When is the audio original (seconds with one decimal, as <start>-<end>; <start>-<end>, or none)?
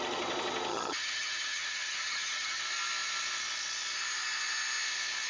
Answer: 0.0-0.7; 2.6-5.3